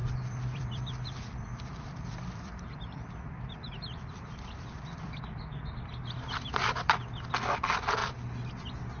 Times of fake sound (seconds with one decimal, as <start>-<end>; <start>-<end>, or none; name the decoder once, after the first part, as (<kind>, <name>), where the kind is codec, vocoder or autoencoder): 0.0-5.2 (vocoder, BigVGAN v2)